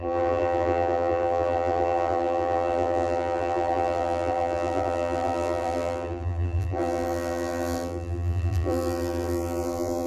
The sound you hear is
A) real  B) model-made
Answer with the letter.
B